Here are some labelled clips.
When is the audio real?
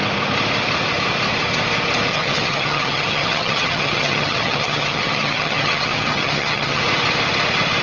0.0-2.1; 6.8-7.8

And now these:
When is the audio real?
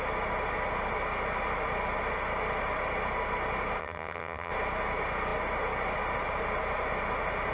0.0-3.8; 4.5-7.5